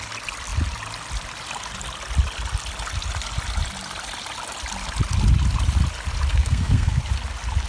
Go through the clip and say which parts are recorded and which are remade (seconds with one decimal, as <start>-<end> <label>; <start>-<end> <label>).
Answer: 0.0-6.3 recorded; 6.3-7.0 remade; 7.0-7.7 recorded